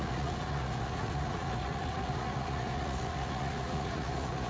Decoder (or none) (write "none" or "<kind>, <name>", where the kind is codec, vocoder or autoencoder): vocoder, Vocos